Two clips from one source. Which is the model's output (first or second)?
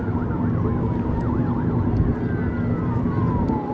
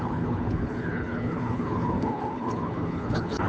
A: second